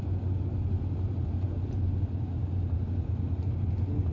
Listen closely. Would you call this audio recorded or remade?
recorded